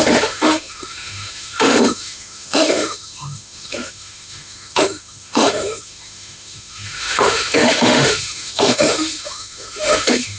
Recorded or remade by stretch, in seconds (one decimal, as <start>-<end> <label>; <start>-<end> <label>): 0.0-10.4 remade